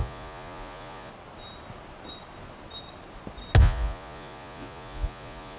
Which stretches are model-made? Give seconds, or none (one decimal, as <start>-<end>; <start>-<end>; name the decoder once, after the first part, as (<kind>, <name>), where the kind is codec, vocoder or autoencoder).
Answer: 0.0-1.1 (vocoder, Vocos); 3.6-5.6